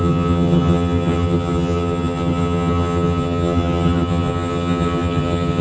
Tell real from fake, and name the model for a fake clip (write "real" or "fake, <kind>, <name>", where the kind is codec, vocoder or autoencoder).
fake, vocoder, HiFi-GAN